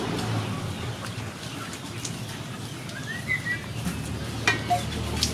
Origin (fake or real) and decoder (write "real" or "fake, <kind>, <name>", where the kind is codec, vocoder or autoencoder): real